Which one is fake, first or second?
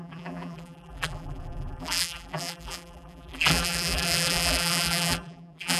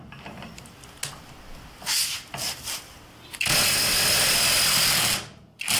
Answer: first